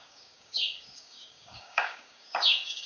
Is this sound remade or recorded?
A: remade